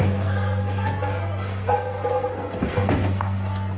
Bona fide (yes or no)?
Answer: no